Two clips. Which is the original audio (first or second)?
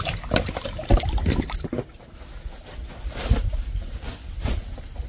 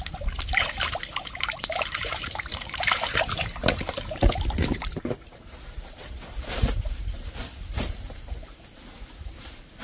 first